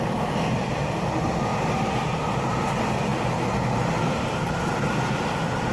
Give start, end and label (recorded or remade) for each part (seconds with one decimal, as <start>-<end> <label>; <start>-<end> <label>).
0.0-5.7 recorded